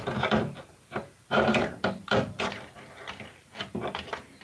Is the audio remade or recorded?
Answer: remade